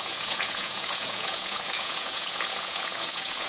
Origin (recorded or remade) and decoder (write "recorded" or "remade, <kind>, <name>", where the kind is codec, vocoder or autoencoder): remade, vocoder, Vocos